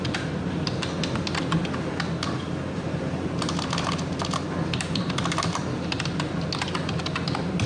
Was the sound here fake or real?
real